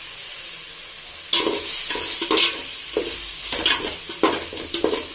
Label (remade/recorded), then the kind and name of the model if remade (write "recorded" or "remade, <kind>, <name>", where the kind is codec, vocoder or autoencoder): recorded